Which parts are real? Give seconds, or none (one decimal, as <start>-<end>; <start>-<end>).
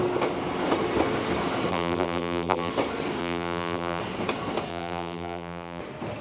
0.0-1.7; 2.7-3.2; 4.0-4.7; 5.8-6.2